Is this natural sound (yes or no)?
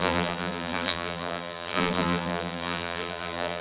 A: no